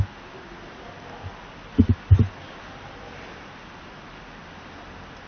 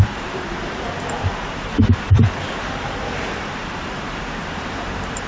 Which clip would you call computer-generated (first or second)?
second